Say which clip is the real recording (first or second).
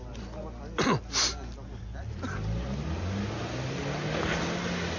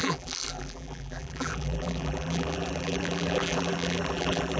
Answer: first